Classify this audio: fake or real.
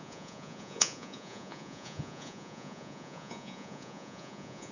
fake